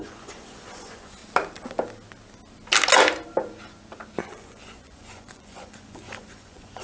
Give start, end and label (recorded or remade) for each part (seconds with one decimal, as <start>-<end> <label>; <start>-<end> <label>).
0.0-1.2 remade; 1.2-4.2 recorded; 4.2-6.8 remade